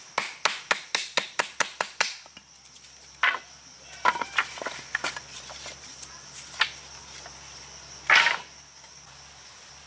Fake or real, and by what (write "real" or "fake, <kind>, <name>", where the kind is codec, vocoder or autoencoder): real